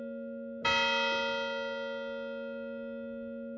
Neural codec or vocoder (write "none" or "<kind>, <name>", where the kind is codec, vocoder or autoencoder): none